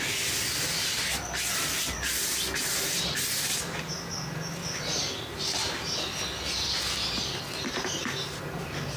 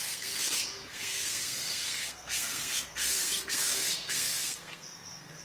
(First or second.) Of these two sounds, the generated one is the second